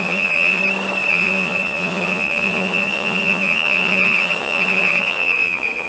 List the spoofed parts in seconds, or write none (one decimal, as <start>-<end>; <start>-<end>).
0.0-0.6; 1.1-5.9